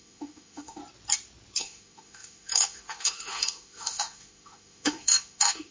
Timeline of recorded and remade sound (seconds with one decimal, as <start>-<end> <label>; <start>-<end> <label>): 0.0-0.8 remade; 0.8-1.6 recorded; 1.6-5.7 remade